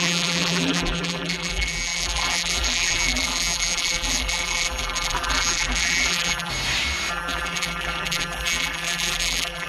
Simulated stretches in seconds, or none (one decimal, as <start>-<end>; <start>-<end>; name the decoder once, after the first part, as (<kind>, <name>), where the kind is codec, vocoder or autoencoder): 0.0-6.5 (vocoder, BigVGAN v2); 7.1-9.7